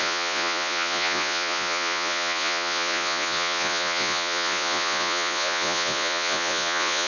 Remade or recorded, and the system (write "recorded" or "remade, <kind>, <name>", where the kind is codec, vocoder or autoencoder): remade, vocoder, Vocos